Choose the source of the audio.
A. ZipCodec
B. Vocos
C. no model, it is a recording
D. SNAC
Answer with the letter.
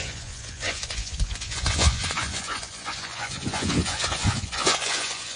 B